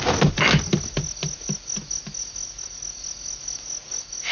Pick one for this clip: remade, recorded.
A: recorded